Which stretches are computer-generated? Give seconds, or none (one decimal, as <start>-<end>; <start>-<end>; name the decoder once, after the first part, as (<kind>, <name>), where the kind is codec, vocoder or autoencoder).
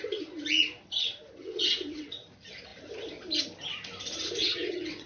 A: 1.4-2.1 (vocoder, WaveNeXt); 4.4-5.1